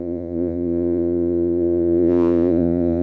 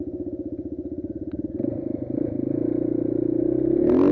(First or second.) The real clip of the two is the second